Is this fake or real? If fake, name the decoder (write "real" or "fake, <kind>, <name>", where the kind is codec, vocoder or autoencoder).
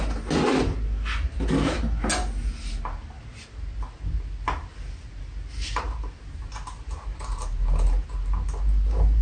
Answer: real